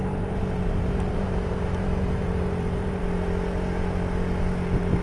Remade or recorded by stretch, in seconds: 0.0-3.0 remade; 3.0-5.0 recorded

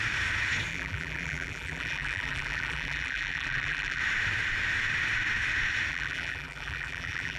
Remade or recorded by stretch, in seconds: 0.0-0.7 recorded; 0.7-4.0 remade; 4.0-5.9 recorded; 5.9-7.4 remade

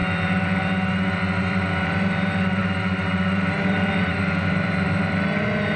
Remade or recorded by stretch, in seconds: 0.0-1.8 recorded; 1.8-5.8 remade

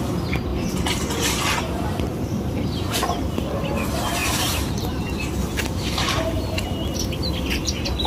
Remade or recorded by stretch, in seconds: 0.0-0.5 recorded; 0.5-1.4 remade; 1.4-2.1 recorded; 2.1-3.8 remade; 3.8-4.2 recorded; 4.2-7.1 remade; 7.1-8.1 recorded

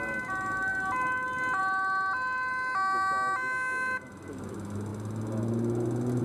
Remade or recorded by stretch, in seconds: 0.0-6.2 recorded

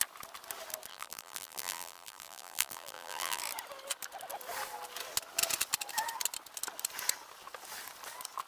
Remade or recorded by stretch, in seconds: 0.0-0.9 recorded; 0.9-3.4 remade; 3.4-8.5 recorded

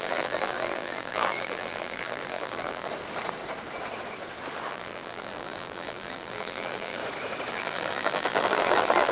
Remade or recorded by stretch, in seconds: 0.0-2.9 remade; 2.9-4.7 recorded; 4.7-7.0 remade; 7.0-7.5 recorded; 7.5-9.1 remade